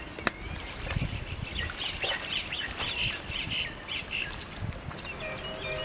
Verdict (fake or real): real